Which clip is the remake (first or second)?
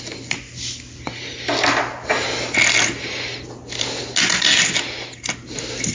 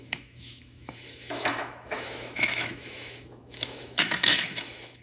second